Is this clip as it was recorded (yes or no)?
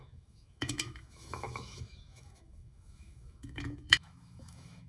no